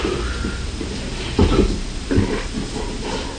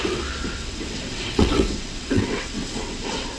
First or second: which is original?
first